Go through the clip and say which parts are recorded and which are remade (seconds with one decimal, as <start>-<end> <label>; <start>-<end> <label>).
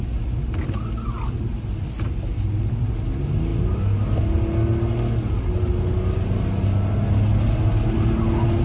0.0-8.6 recorded